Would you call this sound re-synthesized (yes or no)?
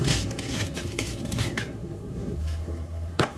yes